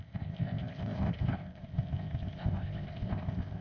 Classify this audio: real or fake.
fake